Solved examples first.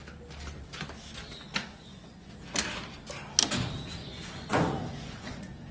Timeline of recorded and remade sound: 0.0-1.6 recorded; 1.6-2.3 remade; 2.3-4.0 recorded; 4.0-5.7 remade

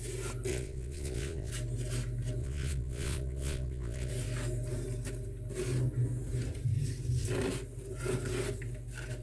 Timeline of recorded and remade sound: 0.0-0.5 recorded; 0.5-1.5 remade; 1.5-2.4 recorded; 2.4-4.1 remade; 4.1-9.2 recorded

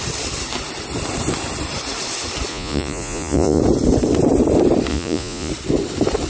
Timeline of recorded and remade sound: 0.0-2.5 recorded; 2.5-3.6 remade; 3.6-4.9 recorded; 4.9-5.5 remade; 5.5-6.3 recorded

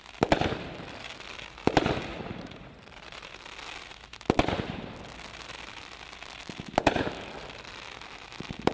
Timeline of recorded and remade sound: 0.0-2.1 recorded; 2.1-2.8 remade; 2.8-8.7 recorded

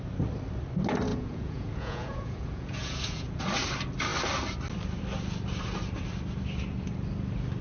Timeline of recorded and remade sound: 0.0-1.1 recorded; 1.1-3.4 remade; 3.4-7.6 recorded

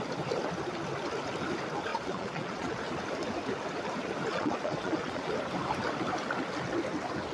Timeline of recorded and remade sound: 0.0-1.9 recorded; 1.9-2.8 remade; 2.8-4.3 recorded; 4.3-5.3 remade; 5.3-7.3 recorded